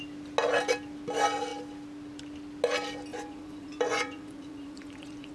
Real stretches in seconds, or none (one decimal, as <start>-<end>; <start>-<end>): 0.0-3.1